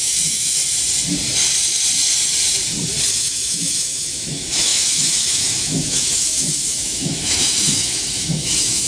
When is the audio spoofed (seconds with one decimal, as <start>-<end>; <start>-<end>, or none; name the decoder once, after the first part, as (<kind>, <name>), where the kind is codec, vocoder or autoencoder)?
0.0-0.6 (autoencoder, DAC-VAE); 3.1-8.9